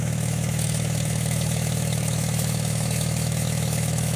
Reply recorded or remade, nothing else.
remade